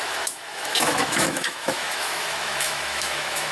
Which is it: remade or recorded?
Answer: remade